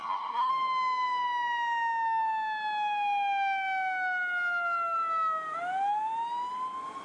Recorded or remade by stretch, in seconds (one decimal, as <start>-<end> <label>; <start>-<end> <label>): 0.0-0.5 remade; 0.5-7.0 recorded